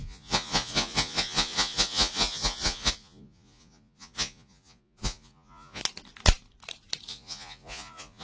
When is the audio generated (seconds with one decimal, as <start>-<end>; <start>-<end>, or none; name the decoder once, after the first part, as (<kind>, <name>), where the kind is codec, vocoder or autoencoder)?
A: 0.0-5.8 (vocoder, Vocos); 7.1-8.2